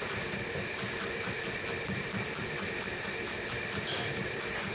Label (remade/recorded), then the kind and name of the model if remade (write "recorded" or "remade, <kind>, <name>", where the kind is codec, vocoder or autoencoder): recorded